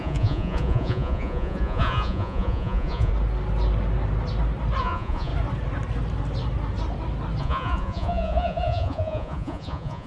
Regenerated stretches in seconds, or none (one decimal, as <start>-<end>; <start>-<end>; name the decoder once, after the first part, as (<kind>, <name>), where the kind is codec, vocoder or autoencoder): 0.0-3.1 (vocoder, Vocos); 4.8-5.3; 7.4-10.1